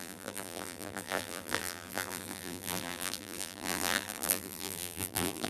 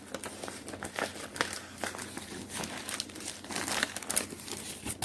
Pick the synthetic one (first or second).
first